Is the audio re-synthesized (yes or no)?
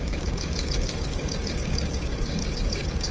yes